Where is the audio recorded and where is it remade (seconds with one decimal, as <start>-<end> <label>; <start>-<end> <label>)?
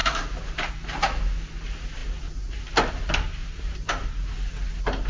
0.0-0.7 remade; 0.7-3.4 recorded; 3.4-4.5 remade; 4.5-5.1 recorded